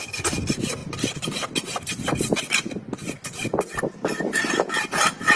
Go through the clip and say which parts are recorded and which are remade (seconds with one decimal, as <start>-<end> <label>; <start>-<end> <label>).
0.0-5.4 recorded